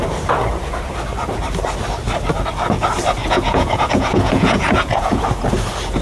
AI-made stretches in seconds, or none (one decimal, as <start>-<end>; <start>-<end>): 3.2-5.2